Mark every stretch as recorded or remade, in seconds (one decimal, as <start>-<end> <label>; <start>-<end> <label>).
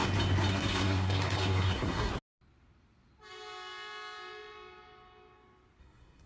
0.0-0.5 recorded; 0.5-2.1 remade; 2.1-5.8 recorded; 5.8-6.3 remade